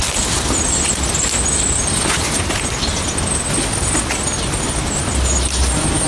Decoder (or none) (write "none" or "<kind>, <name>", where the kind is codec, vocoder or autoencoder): none